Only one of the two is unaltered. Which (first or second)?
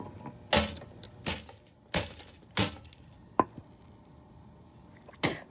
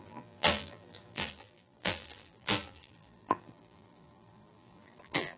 first